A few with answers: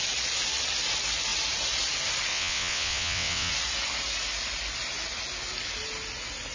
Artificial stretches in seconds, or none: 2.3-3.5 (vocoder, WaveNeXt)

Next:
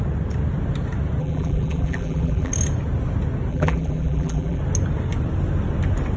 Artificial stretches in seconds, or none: 1.2-2.5 (vocoder, BigVGAN v2); 3.5-4.6

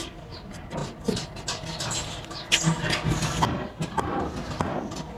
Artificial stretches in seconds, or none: none

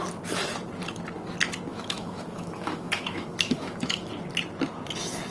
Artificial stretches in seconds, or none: 1.7-4.1 (autoencoder, DAC-VAE)

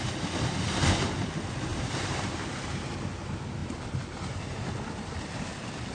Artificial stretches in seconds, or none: 1.7-2.4 (vocoder, BigVGAN v2); 3.6-4.7

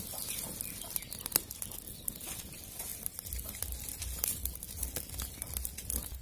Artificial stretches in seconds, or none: 2.9-3.6 (vocoder, BigVGAN v2)